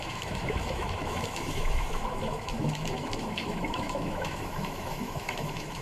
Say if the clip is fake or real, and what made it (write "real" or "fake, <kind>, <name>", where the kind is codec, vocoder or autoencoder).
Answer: fake, autoencoder, DAC-VAE